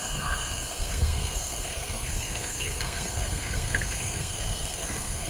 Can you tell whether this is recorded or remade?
remade